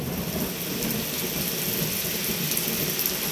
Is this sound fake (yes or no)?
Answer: no